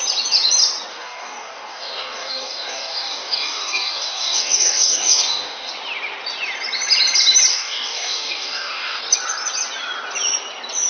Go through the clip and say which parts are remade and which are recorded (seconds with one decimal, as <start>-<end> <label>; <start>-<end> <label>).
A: 0.0-0.9 recorded; 0.9-5.7 remade; 5.7-7.5 recorded; 7.5-9.0 remade; 9.0-10.9 recorded